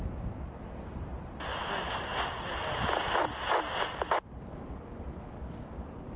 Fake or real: real